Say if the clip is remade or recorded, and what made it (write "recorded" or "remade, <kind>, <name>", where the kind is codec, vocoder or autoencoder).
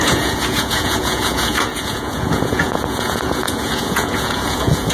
remade, vocoder, Vocos